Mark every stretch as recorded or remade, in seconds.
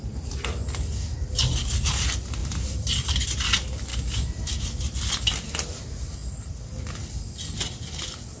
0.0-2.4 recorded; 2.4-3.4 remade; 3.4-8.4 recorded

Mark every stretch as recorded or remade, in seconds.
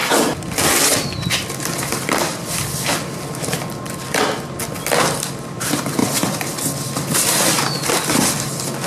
0.0-8.9 recorded